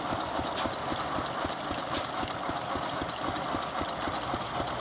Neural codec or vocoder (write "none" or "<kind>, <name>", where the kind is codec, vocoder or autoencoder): none